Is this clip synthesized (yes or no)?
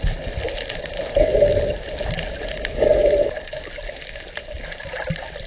no